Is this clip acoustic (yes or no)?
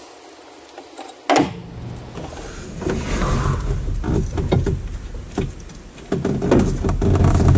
yes